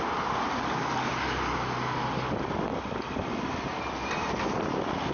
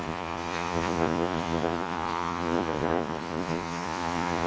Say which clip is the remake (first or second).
second